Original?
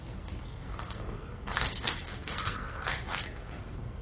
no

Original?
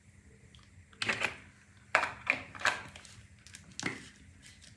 yes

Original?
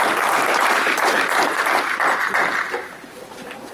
no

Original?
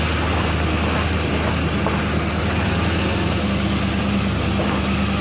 yes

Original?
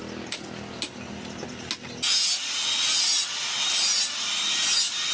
yes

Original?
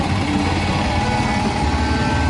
yes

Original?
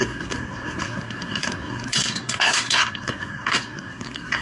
no